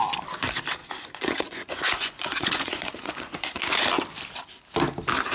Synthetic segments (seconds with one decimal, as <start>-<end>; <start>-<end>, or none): 0.8-3.6